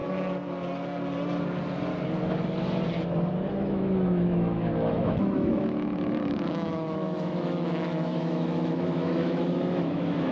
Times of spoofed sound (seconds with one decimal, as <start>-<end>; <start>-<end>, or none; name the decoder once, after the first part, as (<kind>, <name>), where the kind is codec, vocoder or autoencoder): 3.5-10.3 (autoencoder, DAC-VAE)